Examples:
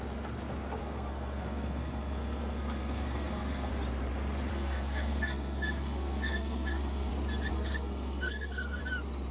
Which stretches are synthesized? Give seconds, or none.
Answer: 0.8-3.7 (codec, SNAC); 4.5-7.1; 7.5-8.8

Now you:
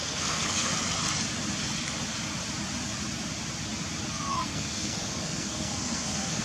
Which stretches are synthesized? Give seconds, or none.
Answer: 0.0-0.7 (codec, SNAC); 4.1-6.4